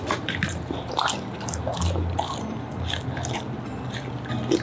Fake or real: real